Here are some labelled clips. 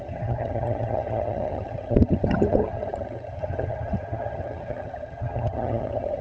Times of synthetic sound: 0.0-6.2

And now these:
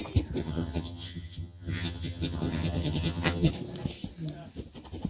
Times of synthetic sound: 0.4-3.5

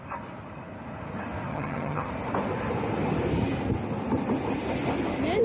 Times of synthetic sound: 1.5-2.1

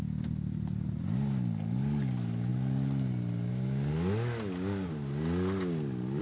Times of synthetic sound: none

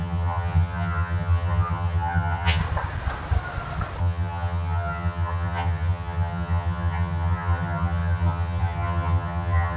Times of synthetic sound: 0.0-2.6; 4.0-9.8

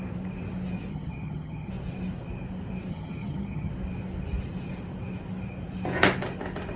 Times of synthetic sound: 0.9-1.7; 2.9-3.7